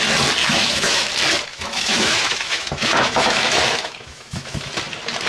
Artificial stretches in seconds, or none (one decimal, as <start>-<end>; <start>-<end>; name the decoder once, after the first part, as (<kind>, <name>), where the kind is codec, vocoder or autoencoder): 0.4-1.1 (autoencoder, DAC-VAE); 1.5-4.7